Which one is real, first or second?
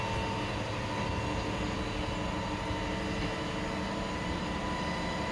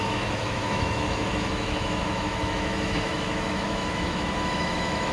first